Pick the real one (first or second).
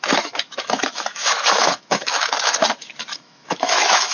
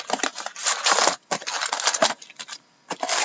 second